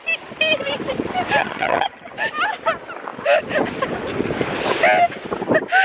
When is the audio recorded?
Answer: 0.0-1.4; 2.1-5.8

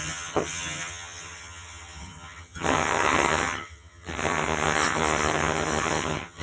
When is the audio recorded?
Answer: none

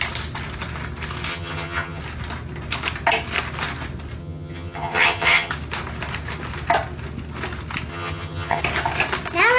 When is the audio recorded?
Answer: 0.0-1.3; 2.0-4.2; 5.5-7.9; 8.6-9.6

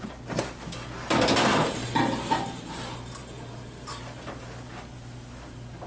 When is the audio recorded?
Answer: 0.0-5.9

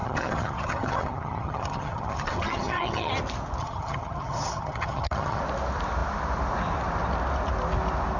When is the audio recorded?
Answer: 3.1-3.6; 5.4-8.2

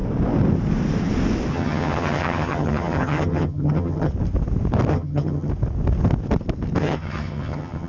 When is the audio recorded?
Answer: 0.0-1.5; 4.1-4.9; 5.5-6.8